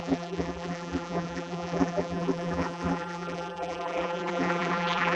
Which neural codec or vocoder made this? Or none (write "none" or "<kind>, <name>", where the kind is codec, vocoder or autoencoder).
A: vocoder, BigVGAN v2